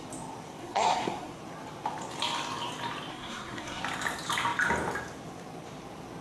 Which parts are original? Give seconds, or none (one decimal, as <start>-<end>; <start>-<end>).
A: 0.0-0.6; 1.4-3.1; 3.8-6.2